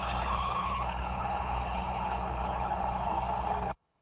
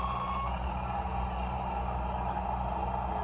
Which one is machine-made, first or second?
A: first